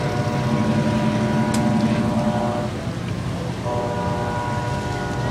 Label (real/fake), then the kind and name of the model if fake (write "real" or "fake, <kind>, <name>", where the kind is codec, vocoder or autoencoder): real